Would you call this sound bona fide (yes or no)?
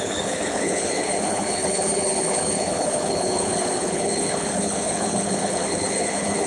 no